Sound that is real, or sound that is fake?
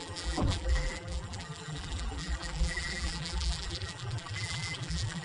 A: fake